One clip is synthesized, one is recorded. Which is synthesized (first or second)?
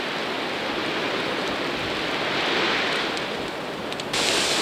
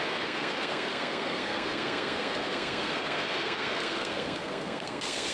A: second